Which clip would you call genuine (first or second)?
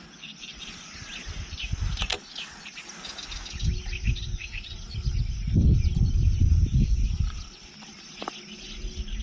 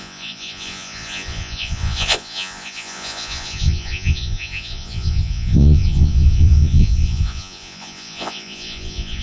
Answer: first